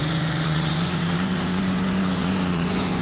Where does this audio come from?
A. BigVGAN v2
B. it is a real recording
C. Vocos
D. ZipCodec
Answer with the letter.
C